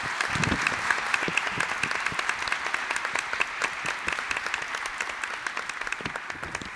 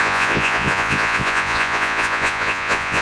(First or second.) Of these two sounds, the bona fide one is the first